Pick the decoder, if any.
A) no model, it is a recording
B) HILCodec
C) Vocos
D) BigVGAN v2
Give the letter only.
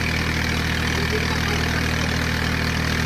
A